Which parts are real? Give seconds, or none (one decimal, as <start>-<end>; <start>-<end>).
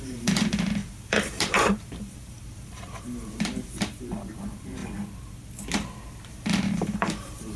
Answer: 4.8-6.3